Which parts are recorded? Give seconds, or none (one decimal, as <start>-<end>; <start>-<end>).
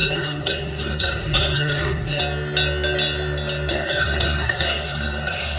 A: 2.2-3.7